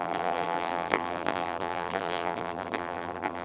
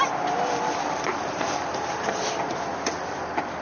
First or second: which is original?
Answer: second